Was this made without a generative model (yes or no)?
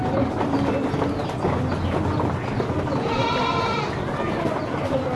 yes